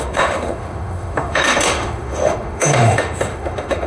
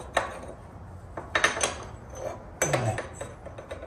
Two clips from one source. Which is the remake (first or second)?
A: first